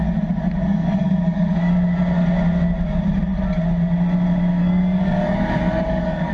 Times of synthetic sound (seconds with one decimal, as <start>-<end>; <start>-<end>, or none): 0.7-1.7; 4.6-6.3